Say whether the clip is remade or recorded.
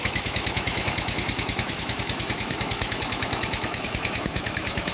remade